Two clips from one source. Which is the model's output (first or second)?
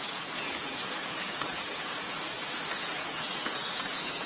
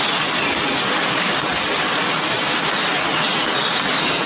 first